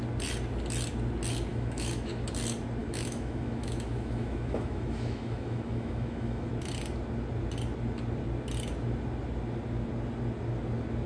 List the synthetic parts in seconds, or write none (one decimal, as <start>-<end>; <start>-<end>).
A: 1.5-2.3; 2.8-6.5